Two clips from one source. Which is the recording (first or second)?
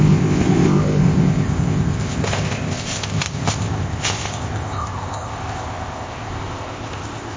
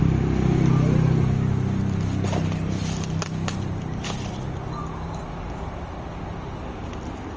second